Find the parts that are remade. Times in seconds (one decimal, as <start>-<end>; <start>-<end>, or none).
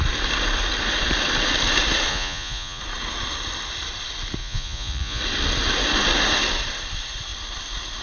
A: 2.1-2.8; 4.4-5.2